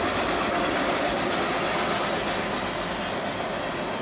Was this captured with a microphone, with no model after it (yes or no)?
yes